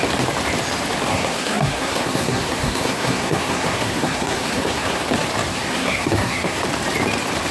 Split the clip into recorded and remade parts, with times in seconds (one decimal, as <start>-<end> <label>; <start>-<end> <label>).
0.0-1.1 recorded; 1.1-5.0 remade; 5.0-5.5 recorded; 5.5-6.6 remade; 6.6-7.5 recorded